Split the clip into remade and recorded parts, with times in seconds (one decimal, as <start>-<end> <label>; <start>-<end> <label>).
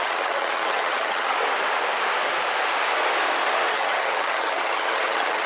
0.0-1.4 remade; 1.4-3.7 recorded; 3.7-5.5 remade